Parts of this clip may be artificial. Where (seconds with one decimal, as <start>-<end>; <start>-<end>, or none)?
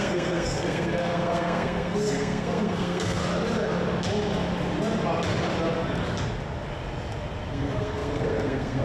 0.0-3.2; 7.5-8.8